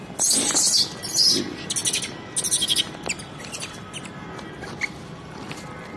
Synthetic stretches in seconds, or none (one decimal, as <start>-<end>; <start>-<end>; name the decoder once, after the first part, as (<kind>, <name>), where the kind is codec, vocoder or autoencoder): none